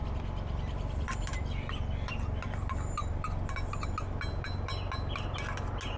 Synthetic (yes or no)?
no